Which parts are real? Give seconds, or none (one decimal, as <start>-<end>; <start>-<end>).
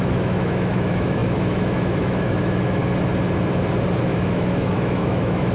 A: 2.8-4.0